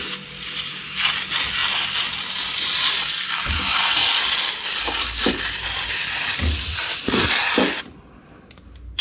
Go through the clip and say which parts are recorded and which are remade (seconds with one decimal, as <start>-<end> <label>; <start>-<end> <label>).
0.0-9.0 recorded